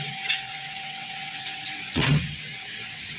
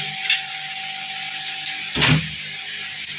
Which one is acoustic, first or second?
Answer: second